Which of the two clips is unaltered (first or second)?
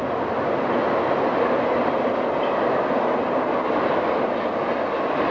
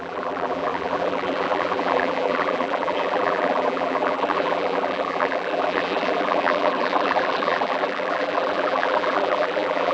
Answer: first